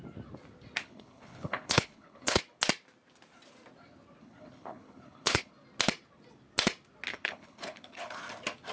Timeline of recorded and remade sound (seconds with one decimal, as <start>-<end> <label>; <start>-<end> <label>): 0.0-0.8 recorded; 0.8-2.4 remade; 2.4-4.2 recorded; 4.2-5.5 remade; 5.5-7.1 recorded; 7.1-8.2 remade; 8.2-8.7 recorded